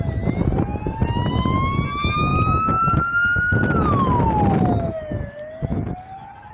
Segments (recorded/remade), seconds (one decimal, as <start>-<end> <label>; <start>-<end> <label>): 0.0-6.5 recorded